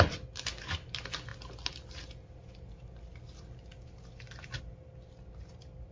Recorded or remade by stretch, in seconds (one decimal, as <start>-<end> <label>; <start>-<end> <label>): 0.0-5.9 recorded